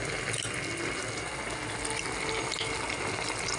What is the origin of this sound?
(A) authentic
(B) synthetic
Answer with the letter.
A